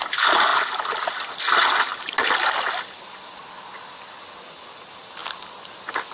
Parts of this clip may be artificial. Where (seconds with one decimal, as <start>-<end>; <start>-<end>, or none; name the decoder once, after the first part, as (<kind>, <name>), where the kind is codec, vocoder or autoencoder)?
none